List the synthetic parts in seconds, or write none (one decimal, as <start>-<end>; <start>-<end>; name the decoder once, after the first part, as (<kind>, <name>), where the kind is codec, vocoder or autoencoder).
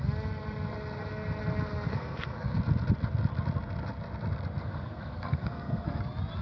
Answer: 1.9-2.6 (codec, SNAC); 4.6-6.0